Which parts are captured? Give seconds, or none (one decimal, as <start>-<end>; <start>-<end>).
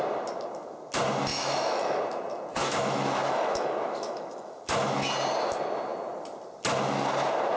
0.0-1.3; 2.0-2.6; 5.1-7.6